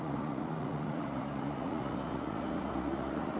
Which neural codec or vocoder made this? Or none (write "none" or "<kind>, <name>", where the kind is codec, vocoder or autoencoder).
vocoder, Vocos